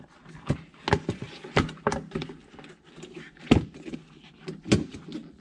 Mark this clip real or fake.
real